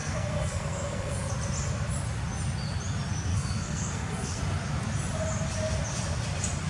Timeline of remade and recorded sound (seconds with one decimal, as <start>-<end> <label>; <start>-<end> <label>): 0.0-1.3 remade; 1.3-3.3 recorded; 3.3-4.4 remade; 4.4-6.7 recorded